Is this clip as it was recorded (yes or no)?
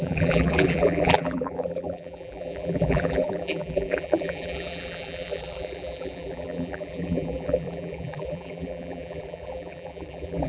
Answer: no